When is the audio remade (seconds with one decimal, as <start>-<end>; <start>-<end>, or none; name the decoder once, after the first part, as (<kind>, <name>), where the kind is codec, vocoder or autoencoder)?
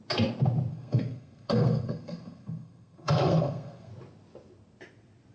0.7-3.9 (codec, SNAC)